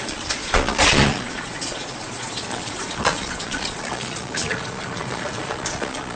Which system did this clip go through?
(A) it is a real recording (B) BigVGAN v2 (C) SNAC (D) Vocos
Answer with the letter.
D